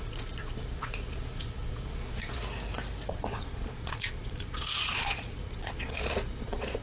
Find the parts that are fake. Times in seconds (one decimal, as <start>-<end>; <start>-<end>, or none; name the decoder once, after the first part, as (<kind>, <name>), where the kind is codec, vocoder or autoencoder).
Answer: 0.0-2.4 (vocoder, Vocos); 3.1-6.8